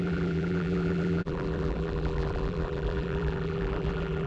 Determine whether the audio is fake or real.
fake